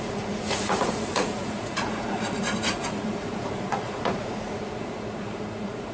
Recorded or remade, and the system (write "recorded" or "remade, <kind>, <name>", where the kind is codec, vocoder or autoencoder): remade, vocoder, Vocos